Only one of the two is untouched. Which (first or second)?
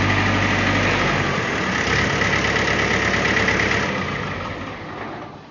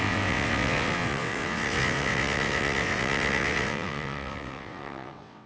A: first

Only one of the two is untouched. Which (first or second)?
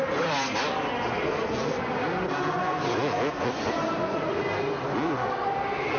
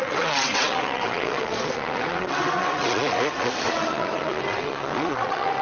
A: first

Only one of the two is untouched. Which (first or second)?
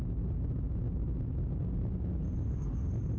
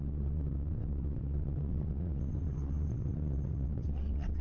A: first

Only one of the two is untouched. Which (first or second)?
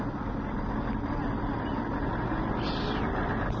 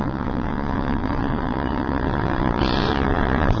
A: first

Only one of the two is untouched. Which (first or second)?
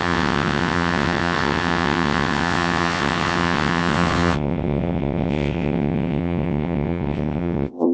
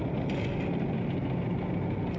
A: second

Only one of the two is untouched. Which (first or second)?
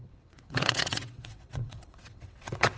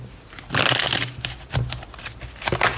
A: second